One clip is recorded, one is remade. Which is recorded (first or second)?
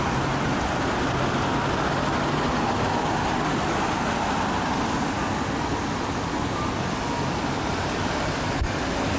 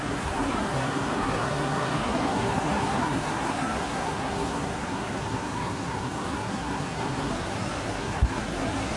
first